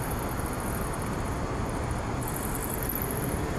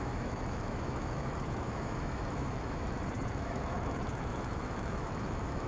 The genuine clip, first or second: first